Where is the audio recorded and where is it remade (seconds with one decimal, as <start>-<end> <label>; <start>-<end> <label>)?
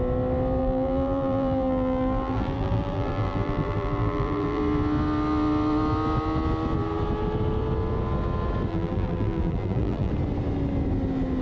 0.0-0.6 recorded; 0.6-4.6 remade; 4.6-8.7 recorded; 8.7-10.1 remade; 10.1-11.4 recorded